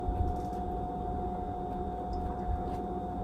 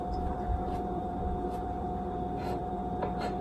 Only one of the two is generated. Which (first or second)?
second